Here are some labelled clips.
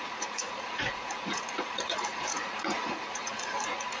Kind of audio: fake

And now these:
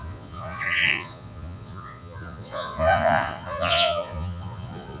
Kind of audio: fake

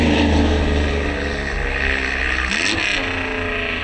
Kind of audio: real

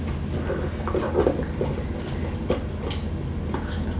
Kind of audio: real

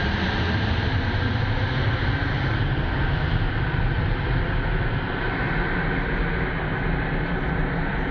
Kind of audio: real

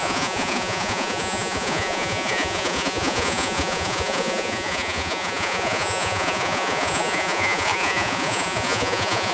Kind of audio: fake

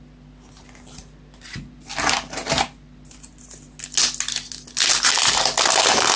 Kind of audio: real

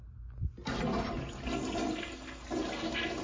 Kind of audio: real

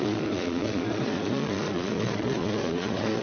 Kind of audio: fake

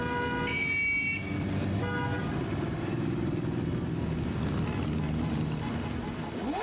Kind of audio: real